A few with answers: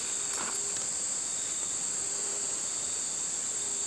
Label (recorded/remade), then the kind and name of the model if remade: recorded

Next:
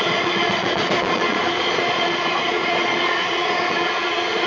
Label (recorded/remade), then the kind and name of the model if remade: remade, vocoder, Vocos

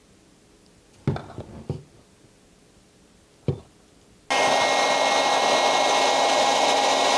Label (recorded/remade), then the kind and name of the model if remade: recorded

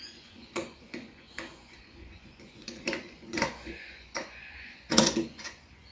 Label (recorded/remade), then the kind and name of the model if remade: remade, vocoder, Vocos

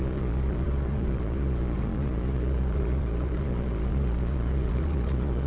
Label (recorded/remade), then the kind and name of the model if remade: remade, vocoder, Vocos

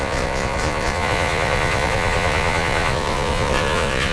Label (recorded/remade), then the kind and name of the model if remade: remade, vocoder, Vocos